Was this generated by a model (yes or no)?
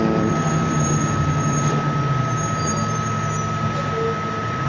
no